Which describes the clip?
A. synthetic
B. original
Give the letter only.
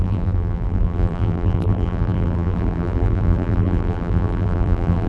A